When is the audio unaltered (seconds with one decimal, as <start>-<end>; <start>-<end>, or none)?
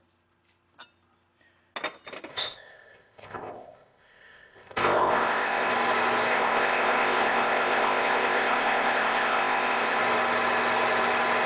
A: 0.0-2.3; 5.7-6.3; 10.0-11.5